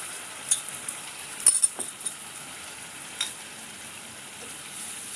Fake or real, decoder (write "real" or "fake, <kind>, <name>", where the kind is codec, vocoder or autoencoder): fake, vocoder, BigVGAN v2